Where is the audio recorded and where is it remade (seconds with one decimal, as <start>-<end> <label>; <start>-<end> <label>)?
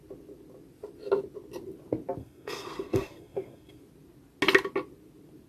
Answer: 0.0-2.2 recorded; 2.2-3.8 remade; 3.8-5.5 recorded